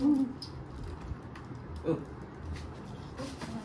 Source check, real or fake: real